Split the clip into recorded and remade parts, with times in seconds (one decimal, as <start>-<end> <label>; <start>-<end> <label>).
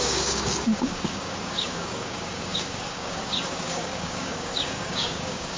0.0-5.6 remade